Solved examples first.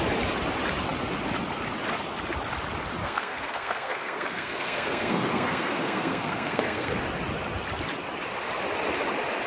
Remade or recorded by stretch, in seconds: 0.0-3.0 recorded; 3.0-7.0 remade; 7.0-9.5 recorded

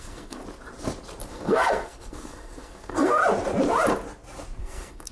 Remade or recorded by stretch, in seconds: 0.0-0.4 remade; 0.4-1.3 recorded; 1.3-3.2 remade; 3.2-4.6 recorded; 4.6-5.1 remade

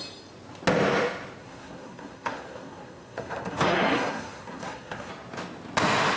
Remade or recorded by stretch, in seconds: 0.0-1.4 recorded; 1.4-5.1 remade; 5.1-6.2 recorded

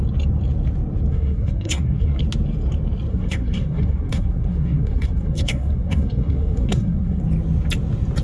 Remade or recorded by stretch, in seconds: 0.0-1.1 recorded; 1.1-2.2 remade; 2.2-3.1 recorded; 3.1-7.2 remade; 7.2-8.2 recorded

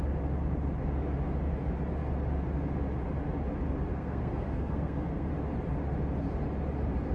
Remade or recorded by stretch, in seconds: 0.0-3.9 recorded; 3.9-5.3 remade; 5.3-7.1 recorded

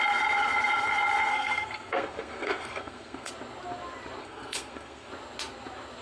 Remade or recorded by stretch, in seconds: 0.0-1.3 recorded; 1.3-3.3 remade; 3.3-4.2 recorded; 4.2-5.1 remade; 5.1-6.0 recorded

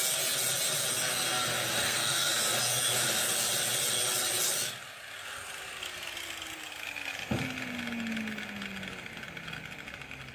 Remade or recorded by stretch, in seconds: 0.0-1.8 recorded; 1.8-2.3 remade; 2.3-10.3 recorded